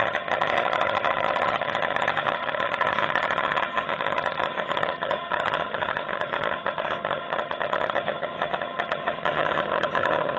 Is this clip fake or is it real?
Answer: fake